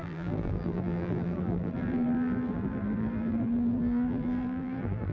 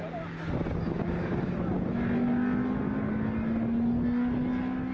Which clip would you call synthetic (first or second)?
first